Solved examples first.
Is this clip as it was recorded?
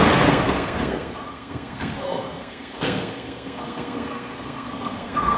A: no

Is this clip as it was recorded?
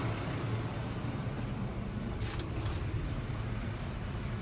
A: yes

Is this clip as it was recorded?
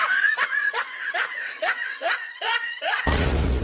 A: no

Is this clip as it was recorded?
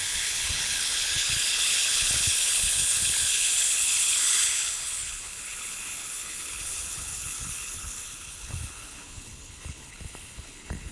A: no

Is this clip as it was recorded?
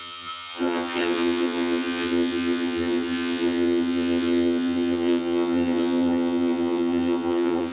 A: no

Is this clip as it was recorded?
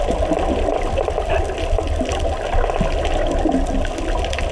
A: yes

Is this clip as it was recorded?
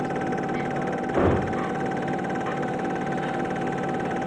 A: yes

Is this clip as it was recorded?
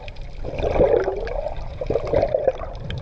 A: yes